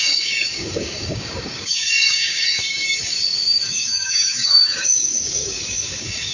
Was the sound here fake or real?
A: fake